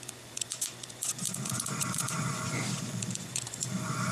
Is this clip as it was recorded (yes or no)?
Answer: no